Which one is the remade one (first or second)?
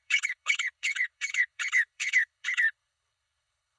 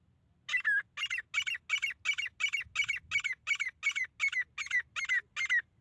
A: first